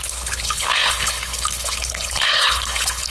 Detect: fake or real fake